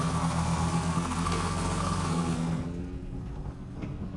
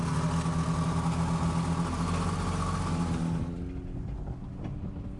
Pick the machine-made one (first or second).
first